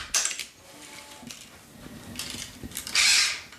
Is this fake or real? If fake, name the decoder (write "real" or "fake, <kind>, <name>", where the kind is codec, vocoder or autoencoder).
real